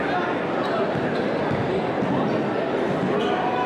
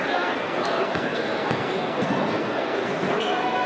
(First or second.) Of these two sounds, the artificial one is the second